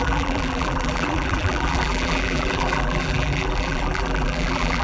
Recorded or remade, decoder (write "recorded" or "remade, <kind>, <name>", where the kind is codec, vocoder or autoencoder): remade, vocoder, BigVGAN v2